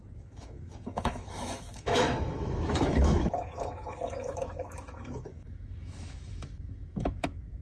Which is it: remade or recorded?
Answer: remade